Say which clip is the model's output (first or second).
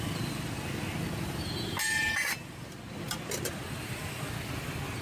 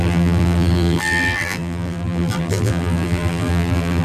second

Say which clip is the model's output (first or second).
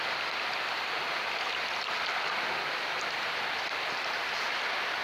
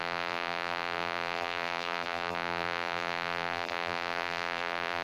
second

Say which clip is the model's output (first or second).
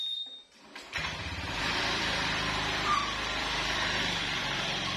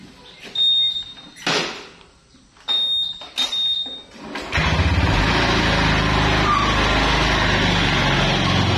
first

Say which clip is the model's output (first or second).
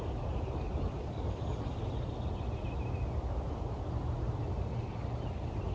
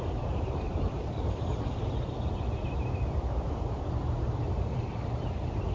second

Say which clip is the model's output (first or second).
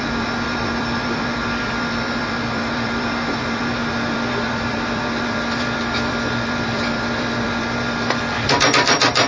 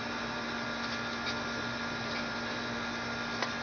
first